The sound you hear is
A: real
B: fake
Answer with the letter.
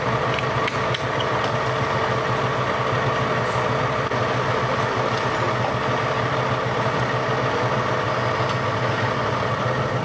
A